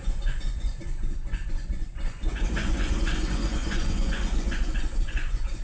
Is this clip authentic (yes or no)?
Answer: no